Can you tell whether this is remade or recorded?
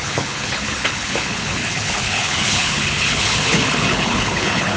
remade